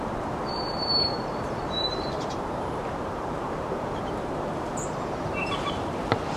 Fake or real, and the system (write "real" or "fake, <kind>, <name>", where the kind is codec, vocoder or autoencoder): fake, vocoder, BigVGAN v2